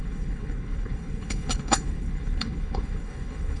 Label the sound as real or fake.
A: fake